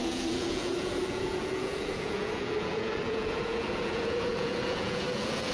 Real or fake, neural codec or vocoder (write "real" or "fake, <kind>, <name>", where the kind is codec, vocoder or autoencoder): fake, vocoder, Vocos